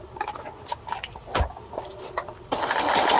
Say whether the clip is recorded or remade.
recorded